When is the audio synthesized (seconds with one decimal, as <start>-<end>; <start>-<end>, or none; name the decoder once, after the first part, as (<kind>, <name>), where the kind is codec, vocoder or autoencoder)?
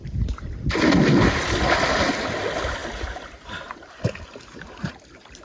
none